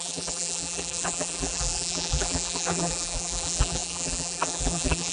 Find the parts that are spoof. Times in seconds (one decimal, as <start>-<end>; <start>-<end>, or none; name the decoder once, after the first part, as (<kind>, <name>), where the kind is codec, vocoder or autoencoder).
0.0-5.1 (vocoder, BigVGAN v2)